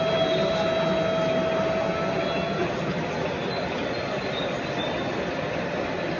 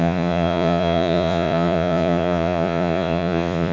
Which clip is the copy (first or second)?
second